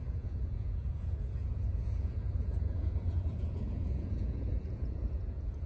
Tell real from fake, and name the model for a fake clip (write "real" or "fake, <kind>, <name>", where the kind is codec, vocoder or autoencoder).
fake, vocoder, Vocos